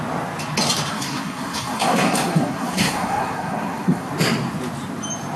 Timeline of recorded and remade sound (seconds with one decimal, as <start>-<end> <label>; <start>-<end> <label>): 0.0-0.9 recorded; 0.9-4.1 remade; 4.1-5.4 recorded